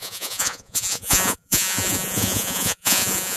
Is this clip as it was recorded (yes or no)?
no